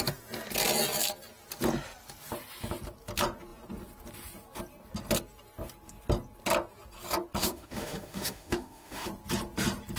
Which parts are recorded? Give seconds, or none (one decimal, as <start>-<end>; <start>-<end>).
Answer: 0.0-7.4; 9.1-10.0